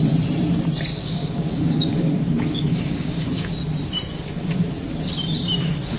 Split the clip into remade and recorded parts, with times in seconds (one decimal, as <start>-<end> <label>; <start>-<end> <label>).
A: 0.0-0.9 recorded; 0.9-3.5 remade; 3.5-6.0 recorded